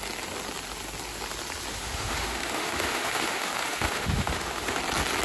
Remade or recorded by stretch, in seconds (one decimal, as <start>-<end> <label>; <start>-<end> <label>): 0.0-1.7 recorded; 1.7-4.8 remade; 4.8-5.2 recorded